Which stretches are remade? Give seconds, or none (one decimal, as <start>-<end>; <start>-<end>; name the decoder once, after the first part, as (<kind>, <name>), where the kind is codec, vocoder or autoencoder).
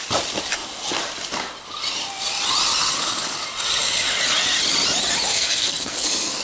5.3-6.4 (codec, SNAC)